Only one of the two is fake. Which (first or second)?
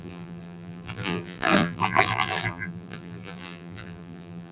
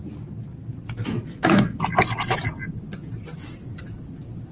first